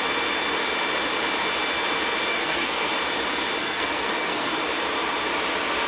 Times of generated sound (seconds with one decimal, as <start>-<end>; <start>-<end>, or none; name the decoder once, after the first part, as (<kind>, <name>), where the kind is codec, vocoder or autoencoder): 2.3-2.9 (codec, SNAC); 3.6-4.5